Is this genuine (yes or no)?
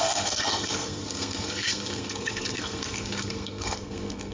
no